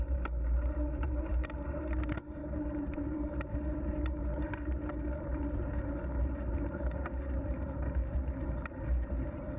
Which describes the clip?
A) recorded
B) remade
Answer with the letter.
B